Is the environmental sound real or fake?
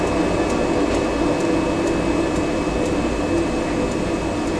real